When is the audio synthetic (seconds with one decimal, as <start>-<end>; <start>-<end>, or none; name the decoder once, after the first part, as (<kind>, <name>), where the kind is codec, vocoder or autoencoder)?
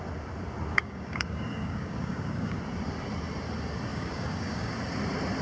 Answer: 0.7-2.6 (codec, DAC); 3.9-4.7